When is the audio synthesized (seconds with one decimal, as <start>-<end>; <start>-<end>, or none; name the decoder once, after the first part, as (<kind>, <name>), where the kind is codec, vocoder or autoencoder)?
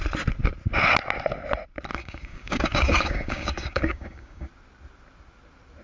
1.9-4.5 (codec, DAC)